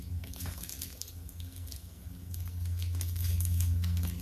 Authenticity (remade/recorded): remade